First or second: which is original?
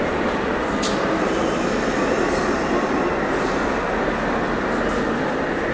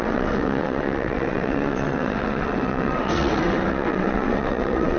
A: first